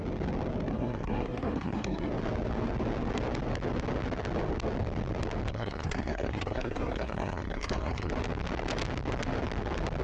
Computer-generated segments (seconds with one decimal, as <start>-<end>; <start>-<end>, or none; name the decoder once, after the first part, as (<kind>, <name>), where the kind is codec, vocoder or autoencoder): 0.7-2.1 (codec, SNAC); 5.5-8.1